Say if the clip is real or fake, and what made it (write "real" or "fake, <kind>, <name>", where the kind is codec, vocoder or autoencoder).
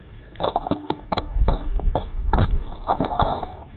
fake, codec, DAC